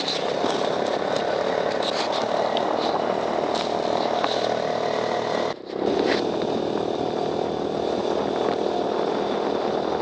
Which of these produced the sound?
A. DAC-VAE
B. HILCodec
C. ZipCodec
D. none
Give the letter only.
D